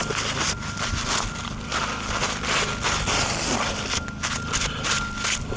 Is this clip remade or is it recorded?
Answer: recorded